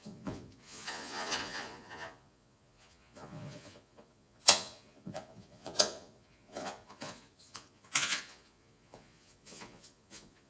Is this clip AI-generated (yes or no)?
yes